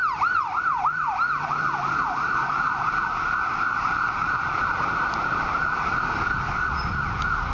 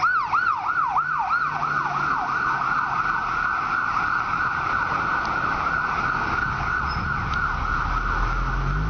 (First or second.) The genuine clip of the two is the second